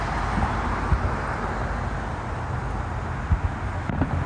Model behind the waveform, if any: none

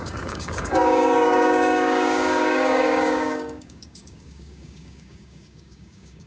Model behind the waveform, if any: codec, DAC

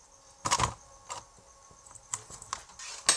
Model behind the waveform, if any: none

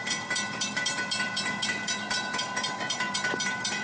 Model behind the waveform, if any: vocoder, BigVGAN v2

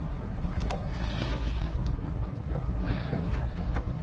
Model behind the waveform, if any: codec, SNAC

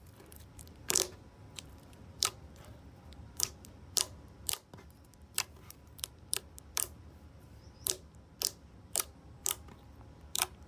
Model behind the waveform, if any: vocoder, BigVGAN v2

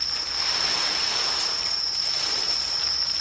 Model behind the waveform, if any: none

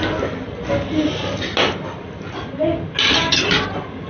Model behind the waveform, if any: none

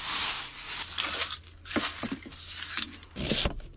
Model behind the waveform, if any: none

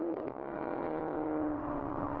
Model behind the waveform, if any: vocoder, WaveNeXt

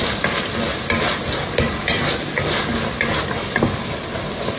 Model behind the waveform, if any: none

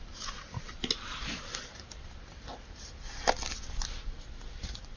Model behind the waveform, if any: none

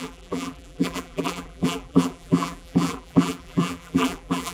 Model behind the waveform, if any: vocoder, BigVGAN v2